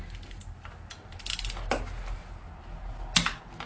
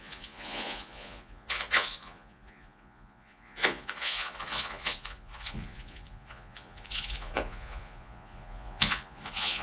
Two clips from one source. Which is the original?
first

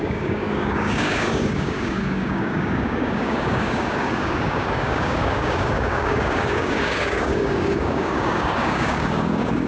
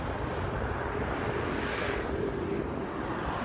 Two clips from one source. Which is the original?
second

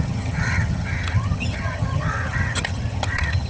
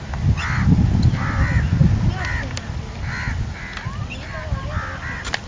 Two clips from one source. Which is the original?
second